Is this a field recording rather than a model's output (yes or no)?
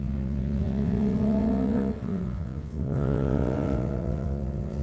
no